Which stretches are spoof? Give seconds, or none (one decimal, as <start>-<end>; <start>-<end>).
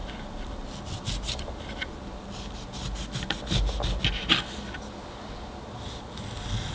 none